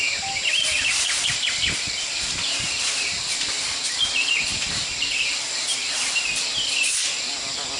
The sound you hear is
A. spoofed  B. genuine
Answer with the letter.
A